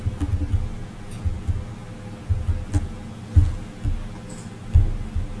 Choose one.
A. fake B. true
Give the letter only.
B